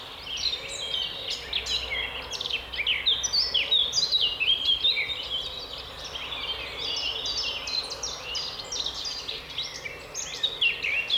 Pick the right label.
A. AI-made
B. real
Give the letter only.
B